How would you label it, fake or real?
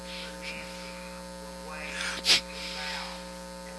real